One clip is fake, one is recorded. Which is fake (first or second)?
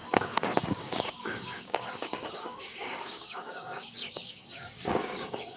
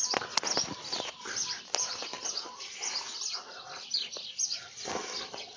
first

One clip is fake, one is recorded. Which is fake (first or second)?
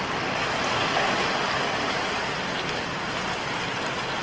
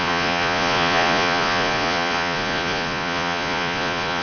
second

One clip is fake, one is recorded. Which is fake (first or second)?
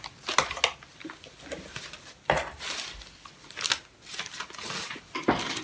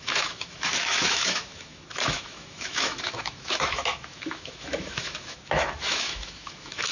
second